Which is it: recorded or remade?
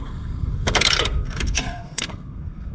remade